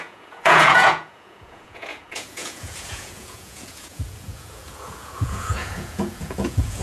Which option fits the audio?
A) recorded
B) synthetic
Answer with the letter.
B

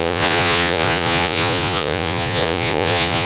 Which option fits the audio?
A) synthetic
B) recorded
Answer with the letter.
A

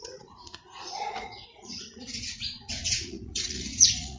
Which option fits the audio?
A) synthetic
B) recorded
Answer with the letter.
A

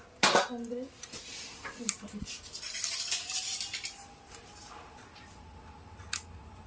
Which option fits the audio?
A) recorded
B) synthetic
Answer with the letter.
A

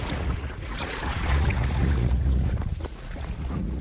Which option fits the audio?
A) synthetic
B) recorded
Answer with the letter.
A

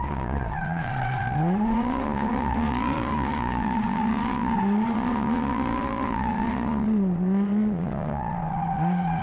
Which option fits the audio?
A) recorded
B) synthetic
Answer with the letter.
B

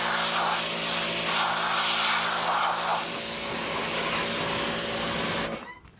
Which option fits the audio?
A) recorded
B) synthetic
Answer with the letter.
A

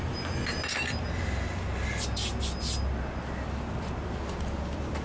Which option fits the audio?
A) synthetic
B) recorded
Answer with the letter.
B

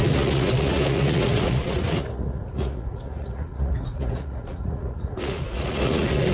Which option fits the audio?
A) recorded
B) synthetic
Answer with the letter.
B